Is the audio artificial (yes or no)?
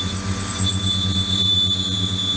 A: no